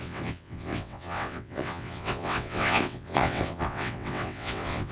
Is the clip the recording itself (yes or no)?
no